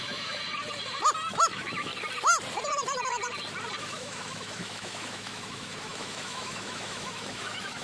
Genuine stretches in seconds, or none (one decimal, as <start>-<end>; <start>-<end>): 0.4-1.3; 1.9-3.8